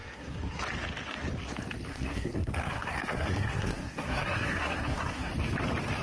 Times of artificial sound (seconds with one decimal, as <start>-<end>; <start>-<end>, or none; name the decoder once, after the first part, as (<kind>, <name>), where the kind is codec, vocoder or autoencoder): 0.0-0.6 (codec, SNAC); 1.9-5.3